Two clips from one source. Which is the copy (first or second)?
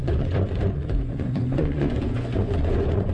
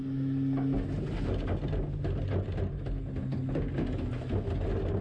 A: first